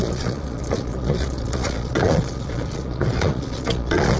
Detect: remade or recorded remade